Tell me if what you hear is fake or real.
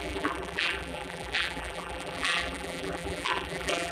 fake